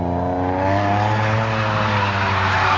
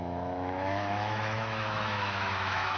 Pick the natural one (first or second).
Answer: first